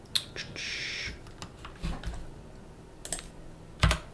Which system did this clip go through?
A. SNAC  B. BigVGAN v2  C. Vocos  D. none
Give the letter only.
D